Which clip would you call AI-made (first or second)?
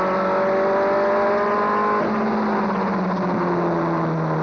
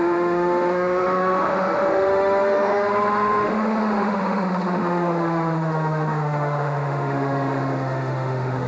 second